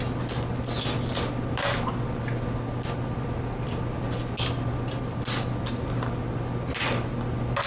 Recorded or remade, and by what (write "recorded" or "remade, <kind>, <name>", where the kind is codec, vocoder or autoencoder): recorded